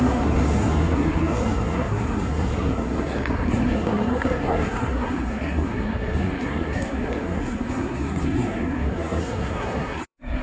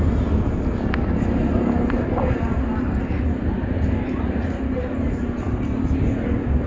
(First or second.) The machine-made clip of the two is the first